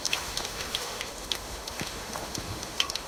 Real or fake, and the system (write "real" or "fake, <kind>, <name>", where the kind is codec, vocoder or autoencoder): fake, autoencoder, DAC-VAE